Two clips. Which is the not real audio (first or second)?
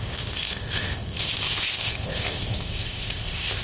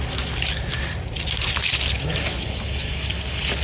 first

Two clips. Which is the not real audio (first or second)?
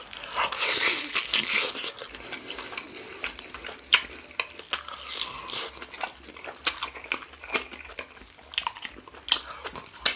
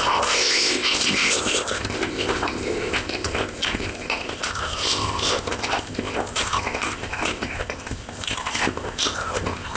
second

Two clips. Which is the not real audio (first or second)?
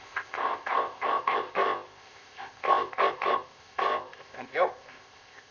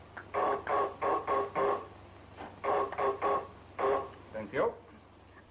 first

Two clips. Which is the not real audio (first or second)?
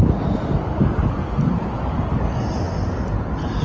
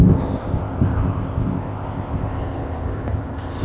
second